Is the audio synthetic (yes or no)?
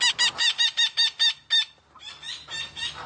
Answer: no